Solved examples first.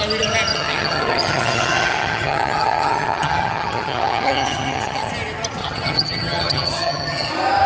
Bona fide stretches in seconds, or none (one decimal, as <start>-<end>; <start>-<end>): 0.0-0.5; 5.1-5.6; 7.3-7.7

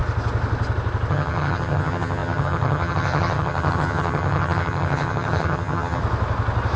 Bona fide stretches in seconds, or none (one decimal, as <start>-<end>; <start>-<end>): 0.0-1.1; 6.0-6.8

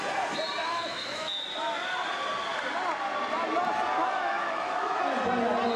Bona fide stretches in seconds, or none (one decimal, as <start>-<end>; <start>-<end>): 0.0-0.6; 1.4-4.0; 5.0-5.8

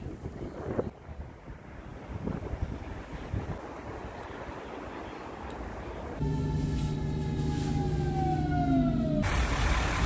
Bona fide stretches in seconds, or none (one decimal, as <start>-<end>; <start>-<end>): 0.0-10.1

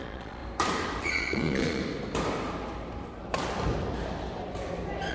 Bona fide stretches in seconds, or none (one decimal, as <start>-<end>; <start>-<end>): 0.4-1.0; 1.8-5.1

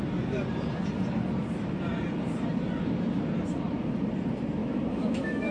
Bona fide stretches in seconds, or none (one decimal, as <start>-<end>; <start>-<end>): 0.0-4.6